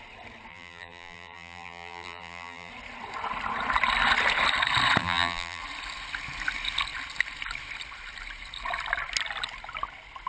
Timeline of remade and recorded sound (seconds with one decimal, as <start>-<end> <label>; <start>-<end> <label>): 0.0-0.5 recorded; 0.5-2.7 remade; 2.7-5.0 recorded; 5.0-5.6 remade; 5.6-10.3 recorded